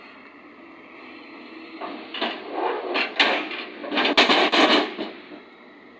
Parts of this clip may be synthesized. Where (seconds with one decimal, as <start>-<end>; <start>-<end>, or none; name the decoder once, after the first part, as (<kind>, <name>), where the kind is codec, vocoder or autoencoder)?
none

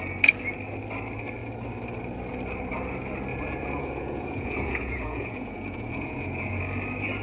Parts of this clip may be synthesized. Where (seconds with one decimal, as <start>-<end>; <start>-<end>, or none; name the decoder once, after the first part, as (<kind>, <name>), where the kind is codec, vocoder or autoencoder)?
3.3-6.6 (vocoder, Vocos)

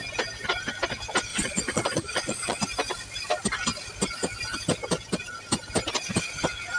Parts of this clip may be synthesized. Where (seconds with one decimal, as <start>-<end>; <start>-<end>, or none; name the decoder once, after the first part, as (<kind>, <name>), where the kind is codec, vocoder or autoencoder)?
1.3-2.6 (vocoder, Vocos)

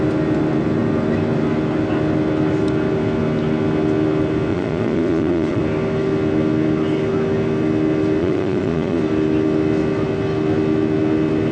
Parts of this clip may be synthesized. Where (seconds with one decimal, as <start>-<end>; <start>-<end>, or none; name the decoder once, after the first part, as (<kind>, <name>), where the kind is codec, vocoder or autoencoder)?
4.5-5.6 (vocoder, Vocos); 8.2-9.0

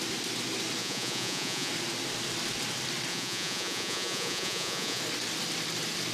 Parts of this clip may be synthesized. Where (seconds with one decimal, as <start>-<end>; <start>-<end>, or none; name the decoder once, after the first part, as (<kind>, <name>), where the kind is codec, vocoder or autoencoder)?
0.8-1.7 (vocoder, Vocos); 3.1-5.0

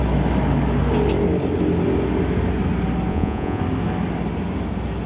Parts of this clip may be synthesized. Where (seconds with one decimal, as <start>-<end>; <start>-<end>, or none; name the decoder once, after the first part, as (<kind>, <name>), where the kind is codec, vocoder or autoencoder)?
3.1-3.6 (vocoder, Vocos)